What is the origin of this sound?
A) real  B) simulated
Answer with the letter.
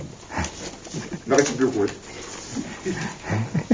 A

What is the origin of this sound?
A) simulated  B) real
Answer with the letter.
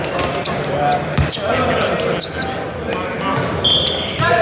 B